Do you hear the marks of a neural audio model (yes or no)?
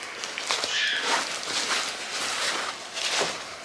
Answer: no